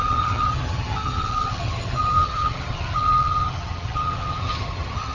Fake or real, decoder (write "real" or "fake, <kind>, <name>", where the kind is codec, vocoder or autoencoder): fake, vocoder, HiFi-GAN